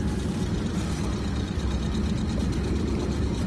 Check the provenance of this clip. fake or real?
real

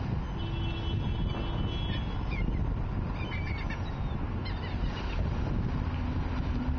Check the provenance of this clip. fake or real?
real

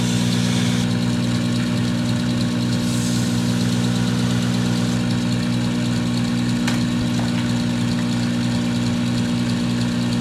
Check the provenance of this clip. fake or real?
real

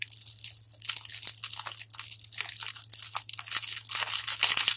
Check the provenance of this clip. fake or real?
real